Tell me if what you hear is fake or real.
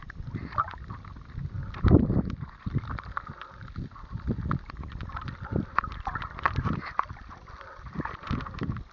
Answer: real